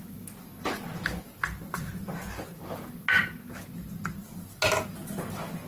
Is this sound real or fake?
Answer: real